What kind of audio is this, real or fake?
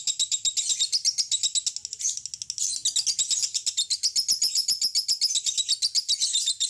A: real